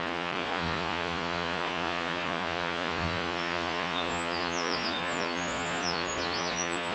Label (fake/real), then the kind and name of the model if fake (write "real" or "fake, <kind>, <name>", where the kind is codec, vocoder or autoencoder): fake, vocoder, Vocos